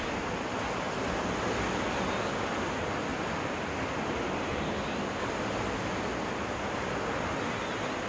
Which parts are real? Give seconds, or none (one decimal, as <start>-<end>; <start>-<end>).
0.0-8.1